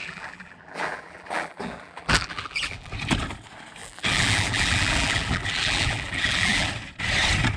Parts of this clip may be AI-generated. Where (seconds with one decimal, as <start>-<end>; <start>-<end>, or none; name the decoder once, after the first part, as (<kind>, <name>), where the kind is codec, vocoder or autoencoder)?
0.0-2.9 (vocoder, BigVGAN v2); 3.8-6.7